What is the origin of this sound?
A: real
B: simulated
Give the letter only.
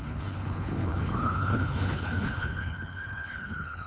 B